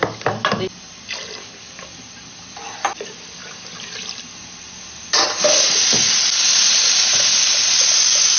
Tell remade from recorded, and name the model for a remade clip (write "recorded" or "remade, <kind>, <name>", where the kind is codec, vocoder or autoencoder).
recorded